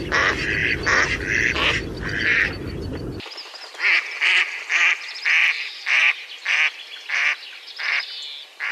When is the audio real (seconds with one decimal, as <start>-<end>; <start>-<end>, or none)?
0.0-0.6; 1.2-2.3; 3.5-5.4; 6.3-8.7